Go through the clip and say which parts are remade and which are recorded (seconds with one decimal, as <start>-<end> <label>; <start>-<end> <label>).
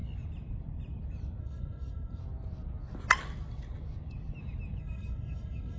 0.0-1.4 recorded; 1.4-2.2 remade; 2.2-4.8 recorded; 4.8-5.8 remade